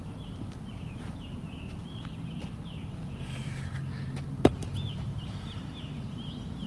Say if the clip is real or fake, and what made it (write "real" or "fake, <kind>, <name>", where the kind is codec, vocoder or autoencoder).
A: fake, vocoder, BigVGAN v2